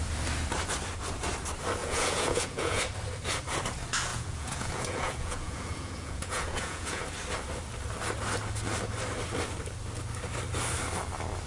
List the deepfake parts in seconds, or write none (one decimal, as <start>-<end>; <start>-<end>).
1.8-2.8; 4.1-7.0